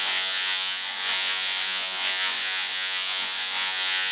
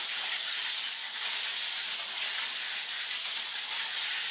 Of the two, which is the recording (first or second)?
second